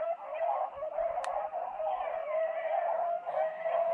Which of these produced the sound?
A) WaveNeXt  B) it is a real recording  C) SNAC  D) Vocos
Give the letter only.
B